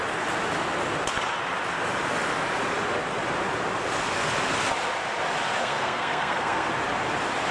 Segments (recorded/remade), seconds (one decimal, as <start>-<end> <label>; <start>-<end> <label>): 0.0-5.6 recorded; 5.6-6.7 remade; 6.7-7.5 recorded